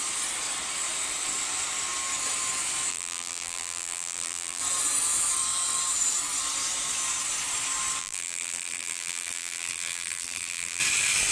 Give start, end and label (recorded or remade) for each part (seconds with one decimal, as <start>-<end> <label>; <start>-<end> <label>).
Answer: 0.0-2.9 recorded; 2.9-4.6 remade; 4.6-8.0 recorded; 8.0-10.8 remade; 10.8-11.3 recorded